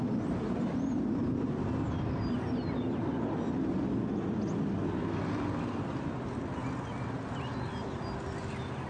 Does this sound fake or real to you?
real